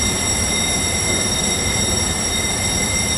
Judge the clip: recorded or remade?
remade